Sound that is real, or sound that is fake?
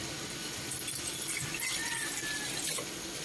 real